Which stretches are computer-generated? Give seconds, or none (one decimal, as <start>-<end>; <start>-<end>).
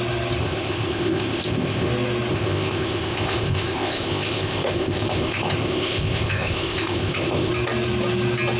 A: 0.4-1.9; 2.3-7.5